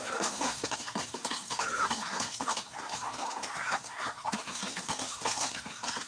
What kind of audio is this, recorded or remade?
remade